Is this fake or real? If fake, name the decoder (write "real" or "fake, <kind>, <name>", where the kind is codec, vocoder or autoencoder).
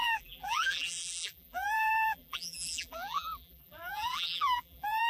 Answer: fake, vocoder, BigVGAN v2